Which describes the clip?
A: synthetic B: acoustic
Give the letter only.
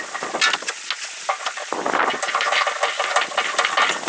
B